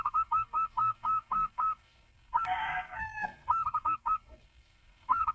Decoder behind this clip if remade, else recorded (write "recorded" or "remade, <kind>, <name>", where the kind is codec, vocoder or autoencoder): remade, codec, SNAC